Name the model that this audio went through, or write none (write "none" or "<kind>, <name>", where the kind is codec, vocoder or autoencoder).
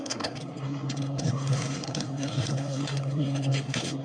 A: codec, SNAC